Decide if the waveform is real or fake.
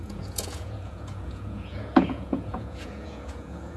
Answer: fake